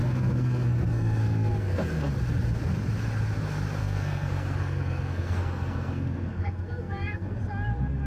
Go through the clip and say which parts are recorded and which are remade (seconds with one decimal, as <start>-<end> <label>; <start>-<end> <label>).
0.0-2.1 remade; 2.1-3.8 recorded; 3.8-7.4 remade; 7.4-8.1 recorded